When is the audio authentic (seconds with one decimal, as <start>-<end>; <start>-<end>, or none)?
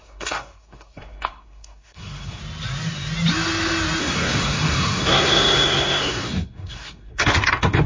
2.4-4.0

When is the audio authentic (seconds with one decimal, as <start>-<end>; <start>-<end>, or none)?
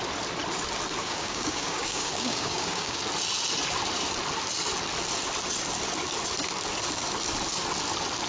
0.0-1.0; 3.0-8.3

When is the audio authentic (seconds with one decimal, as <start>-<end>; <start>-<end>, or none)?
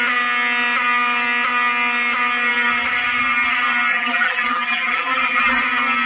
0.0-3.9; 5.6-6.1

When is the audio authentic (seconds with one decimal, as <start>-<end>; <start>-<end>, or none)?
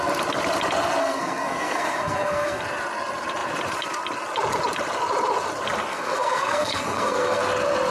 0.0-1.0; 2.6-5.9; 7.4-7.9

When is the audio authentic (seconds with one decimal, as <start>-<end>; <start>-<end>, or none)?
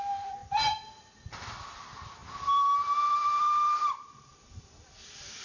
0.4-1.5; 2.2-3.1